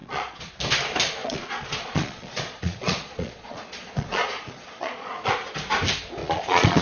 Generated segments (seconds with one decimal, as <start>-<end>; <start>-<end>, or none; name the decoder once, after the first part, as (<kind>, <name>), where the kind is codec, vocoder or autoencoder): 0.0-0.5 (vocoder, Vocos); 1.2-5.3; 6.2-6.8